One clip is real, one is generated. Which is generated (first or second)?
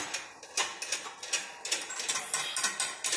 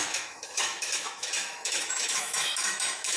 second